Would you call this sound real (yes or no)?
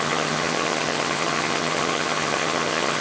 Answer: no